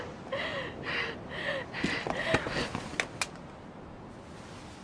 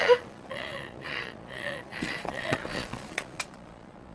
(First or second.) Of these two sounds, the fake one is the second